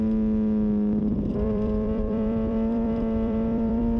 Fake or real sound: fake